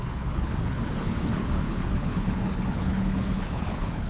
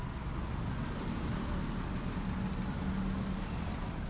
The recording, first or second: second